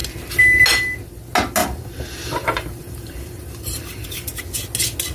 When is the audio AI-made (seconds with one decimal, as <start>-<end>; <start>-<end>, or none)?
1.6-4.4